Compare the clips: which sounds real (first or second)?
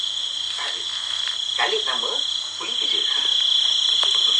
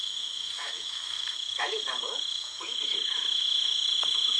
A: first